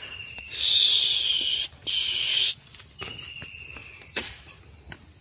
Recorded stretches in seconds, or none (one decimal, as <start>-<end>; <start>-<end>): 0.0-3.8; 4.6-5.2